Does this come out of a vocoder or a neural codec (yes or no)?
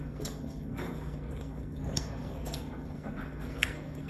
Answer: yes